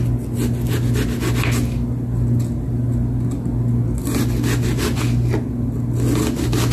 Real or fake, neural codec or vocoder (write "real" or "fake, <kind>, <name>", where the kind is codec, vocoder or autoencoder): real